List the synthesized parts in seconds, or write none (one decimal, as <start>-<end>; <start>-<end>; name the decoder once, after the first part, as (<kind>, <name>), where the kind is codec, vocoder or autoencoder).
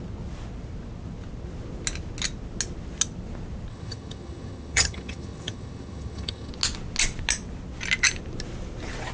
3.7-6.5 (vocoder, HiFi-GAN)